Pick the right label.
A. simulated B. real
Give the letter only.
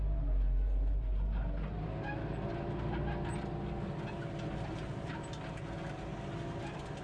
B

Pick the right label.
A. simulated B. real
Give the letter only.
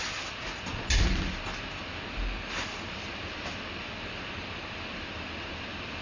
B